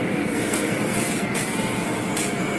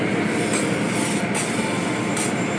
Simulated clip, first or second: first